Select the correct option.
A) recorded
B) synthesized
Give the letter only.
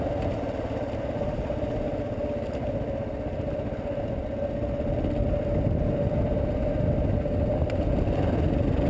A